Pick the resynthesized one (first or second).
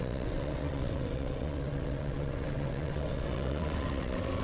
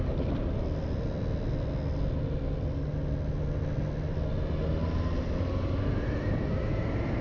first